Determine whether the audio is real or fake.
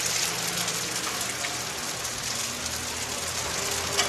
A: real